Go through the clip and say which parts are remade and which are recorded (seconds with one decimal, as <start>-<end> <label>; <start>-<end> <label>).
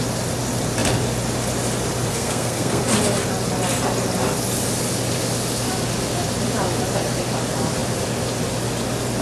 0.0-2.1 recorded; 2.1-2.8 remade; 2.8-9.2 recorded